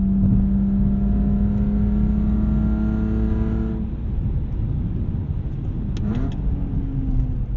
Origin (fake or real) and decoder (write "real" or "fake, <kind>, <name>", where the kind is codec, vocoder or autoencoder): real